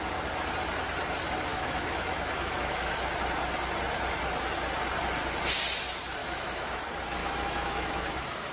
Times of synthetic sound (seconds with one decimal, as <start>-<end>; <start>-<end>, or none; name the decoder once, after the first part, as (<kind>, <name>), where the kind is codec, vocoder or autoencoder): 1.5-2.9 (autoencoder, DAC-VAE); 6.2-6.8; 7.2-8.5